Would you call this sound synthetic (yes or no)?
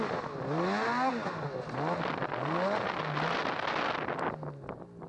no